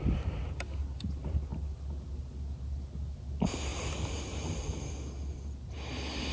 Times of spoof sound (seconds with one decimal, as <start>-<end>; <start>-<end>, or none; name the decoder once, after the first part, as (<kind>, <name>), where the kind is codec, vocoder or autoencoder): none